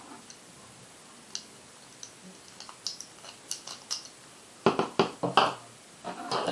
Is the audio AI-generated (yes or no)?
no